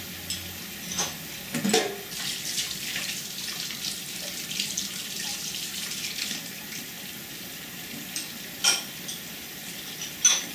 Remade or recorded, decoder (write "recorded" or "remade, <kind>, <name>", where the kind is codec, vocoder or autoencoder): recorded